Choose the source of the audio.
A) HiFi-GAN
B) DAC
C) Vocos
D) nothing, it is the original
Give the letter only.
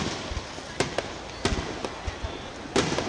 D